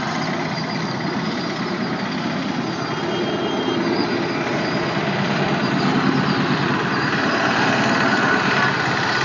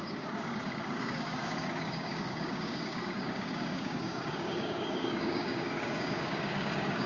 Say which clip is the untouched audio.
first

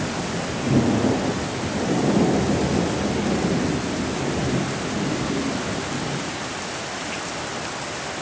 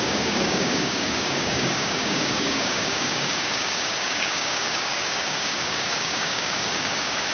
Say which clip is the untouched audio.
first